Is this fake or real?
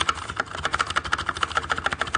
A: real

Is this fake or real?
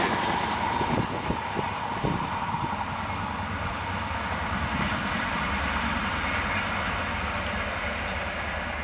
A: real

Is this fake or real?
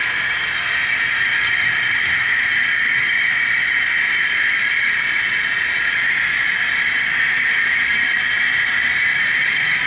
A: real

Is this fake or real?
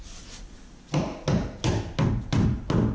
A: real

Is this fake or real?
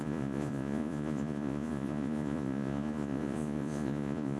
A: fake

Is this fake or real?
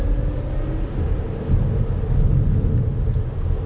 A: real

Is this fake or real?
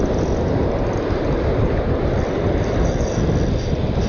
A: real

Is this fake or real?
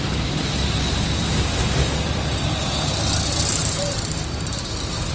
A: fake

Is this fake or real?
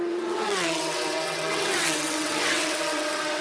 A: fake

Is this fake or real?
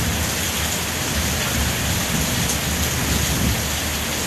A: real